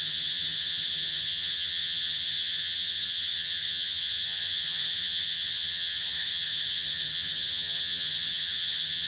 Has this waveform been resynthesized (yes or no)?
yes